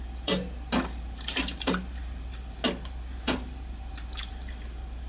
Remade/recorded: recorded